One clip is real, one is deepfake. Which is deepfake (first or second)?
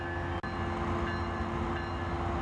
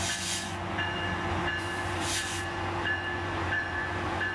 second